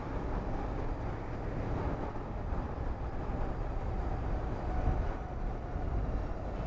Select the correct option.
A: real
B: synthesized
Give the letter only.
A